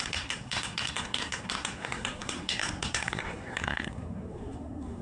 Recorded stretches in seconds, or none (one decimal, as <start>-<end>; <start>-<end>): none